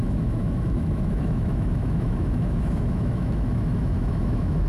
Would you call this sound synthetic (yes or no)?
yes